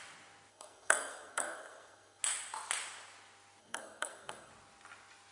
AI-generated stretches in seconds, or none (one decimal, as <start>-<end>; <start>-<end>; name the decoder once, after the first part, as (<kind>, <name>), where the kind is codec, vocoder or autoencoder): 0.5-2.2 (codec, SNAC); 3.6-4.5